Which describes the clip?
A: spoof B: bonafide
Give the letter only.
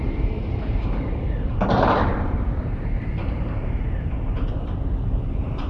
A